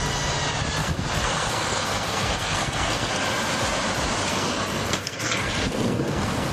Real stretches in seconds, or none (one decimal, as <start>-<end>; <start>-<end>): 0.0-0.8; 3.1-4.3